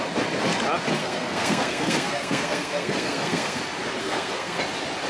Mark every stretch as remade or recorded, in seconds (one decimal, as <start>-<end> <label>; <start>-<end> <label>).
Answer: 0.0-1.0 recorded; 1.0-3.6 remade; 3.6-4.0 recorded; 4.0-4.6 remade; 4.6-5.1 recorded